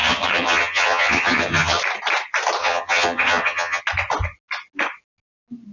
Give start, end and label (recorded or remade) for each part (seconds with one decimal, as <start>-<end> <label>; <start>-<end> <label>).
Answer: 0.0-1.8 remade; 1.8-2.6 recorded; 2.6-3.8 remade; 3.8-5.7 recorded